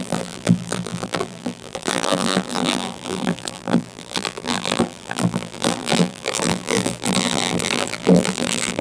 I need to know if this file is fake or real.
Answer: fake